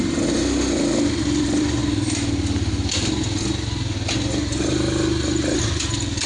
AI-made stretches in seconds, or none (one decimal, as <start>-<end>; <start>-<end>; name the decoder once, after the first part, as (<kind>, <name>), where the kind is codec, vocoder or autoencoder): 0.0-1.8 (vocoder, BigVGAN v2); 5.6-6.3